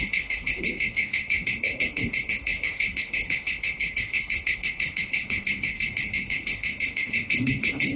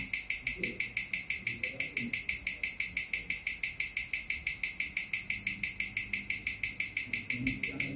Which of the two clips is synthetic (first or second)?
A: first